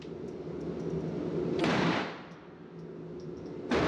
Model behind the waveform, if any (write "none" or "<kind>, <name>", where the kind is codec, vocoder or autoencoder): none